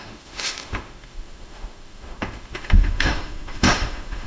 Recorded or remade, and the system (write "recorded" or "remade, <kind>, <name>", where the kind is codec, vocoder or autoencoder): remade, autoencoder, DAC-VAE